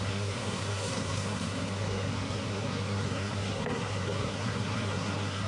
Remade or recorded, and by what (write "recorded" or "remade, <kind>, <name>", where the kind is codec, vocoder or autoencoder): remade, codec, SNAC